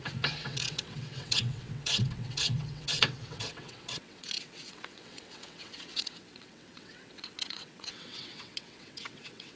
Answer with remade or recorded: remade